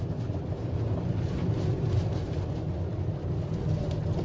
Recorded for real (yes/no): yes